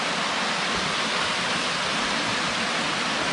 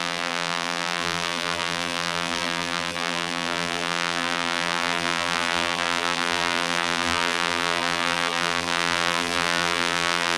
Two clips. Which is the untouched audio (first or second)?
first